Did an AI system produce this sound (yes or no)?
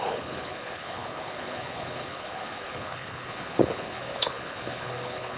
yes